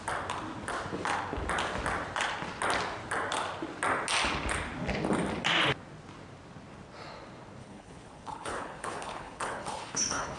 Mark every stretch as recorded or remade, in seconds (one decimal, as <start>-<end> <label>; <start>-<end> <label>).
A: 0.0-7.6 recorded; 7.6-10.4 remade